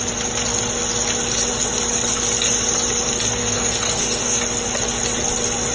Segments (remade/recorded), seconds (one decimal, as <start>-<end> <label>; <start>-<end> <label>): 0.0-3.4 recorded; 3.4-4.4 remade; 4.4-5.7 recorded